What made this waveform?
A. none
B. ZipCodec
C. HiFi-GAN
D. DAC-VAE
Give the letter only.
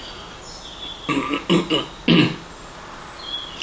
A